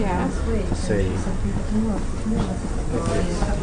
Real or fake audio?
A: real